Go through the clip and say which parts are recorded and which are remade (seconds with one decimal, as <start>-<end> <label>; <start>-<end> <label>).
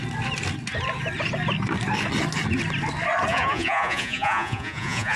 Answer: 0.0-3.3 recorded; 3.3-5.2 remade